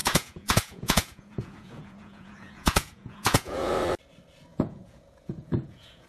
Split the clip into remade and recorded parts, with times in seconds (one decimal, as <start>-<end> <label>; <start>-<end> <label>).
0.0-3.7 remade; 3.7-4.5 recorded; 4.5-6.1 remade